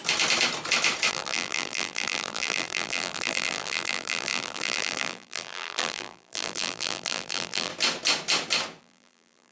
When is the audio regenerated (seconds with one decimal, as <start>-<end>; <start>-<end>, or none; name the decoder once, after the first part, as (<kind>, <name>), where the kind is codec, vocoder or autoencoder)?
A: 1.1-7.7 (vocoder, BigVGAN v2); 8.8-9.5